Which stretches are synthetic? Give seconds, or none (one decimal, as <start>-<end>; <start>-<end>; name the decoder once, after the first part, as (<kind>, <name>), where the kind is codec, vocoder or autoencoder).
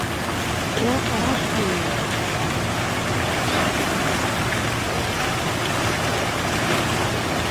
none